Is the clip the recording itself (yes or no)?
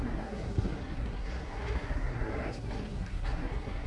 no